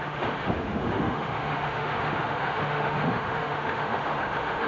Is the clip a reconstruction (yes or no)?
yes